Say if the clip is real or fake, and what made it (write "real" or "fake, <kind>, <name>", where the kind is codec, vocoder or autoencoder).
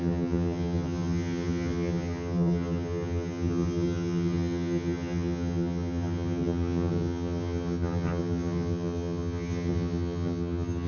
fake, vocoder, HiFi-GAN